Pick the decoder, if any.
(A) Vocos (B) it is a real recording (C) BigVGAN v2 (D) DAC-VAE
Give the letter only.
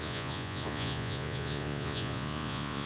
A